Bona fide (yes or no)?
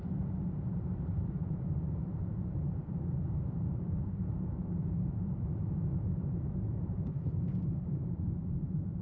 no